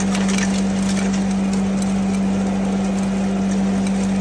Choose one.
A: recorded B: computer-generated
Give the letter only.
A